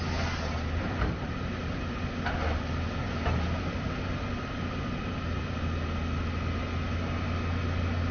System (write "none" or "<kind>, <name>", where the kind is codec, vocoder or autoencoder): none